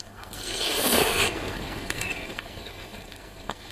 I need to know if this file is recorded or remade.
remade